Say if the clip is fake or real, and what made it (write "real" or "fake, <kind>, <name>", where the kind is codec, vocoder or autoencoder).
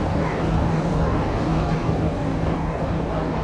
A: fake, codec, DAC